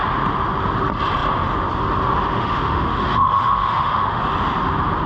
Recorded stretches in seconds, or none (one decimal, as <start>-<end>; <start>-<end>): 0.0-2.3; 4.2-5.1